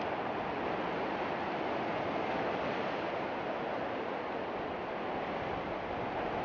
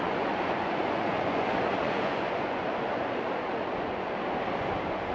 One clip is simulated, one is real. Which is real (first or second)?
first